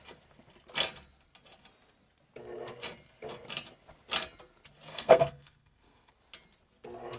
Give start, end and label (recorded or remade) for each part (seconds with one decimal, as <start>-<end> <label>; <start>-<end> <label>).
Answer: 0.0-4.9 recorded; 4.9-6.1 remade; 6.1-7.2 recorded

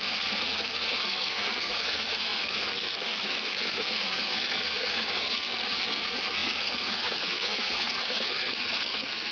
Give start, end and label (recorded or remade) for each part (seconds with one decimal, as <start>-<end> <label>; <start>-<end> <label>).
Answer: 0.0-9.3 remade

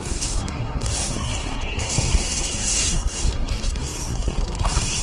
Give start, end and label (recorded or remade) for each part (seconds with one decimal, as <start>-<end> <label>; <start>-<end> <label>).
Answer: 0.0-5.0 remade

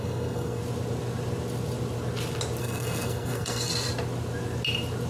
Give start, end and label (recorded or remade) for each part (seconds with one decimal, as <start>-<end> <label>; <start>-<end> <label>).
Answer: 0.0-0.6 remade; 0.6-2.6 recorded; 2.6-3.7 remade; 3.7-5.1 recorded

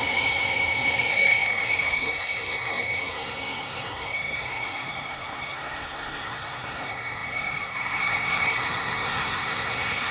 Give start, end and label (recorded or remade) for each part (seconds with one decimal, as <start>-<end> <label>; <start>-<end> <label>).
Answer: 0.0-10.1 remade

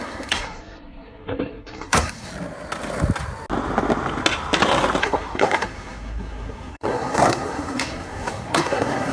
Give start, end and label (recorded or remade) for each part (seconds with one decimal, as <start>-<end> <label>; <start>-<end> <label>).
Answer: 0.0-2.3 remade; 2.3-5.0 recorded; 5.0-9.1 remade

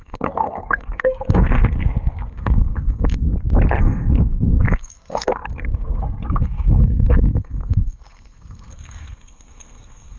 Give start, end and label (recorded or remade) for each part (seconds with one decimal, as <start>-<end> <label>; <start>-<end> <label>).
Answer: 0.0-3.3 remade; 3.3-3.8 recorded; 3.8-10.2 remade